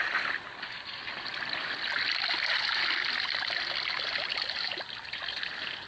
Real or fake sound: real